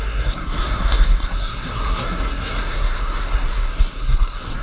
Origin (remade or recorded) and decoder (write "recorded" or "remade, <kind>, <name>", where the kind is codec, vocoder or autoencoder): remade, codec, SNAC